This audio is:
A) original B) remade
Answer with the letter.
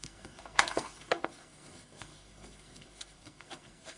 B